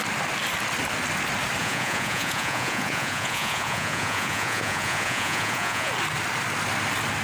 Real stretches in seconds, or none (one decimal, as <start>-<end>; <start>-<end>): 0.0-1.6; 5.9-7.2